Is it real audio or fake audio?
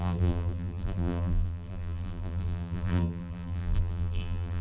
fake